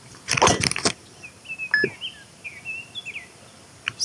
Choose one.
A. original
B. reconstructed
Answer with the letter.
A